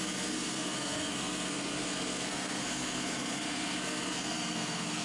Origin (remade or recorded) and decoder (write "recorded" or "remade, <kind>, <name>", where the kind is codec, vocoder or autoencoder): remade, codec, SNAC